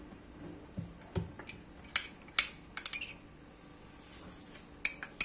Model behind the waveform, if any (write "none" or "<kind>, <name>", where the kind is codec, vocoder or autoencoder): none